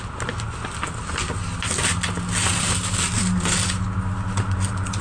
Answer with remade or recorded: recorded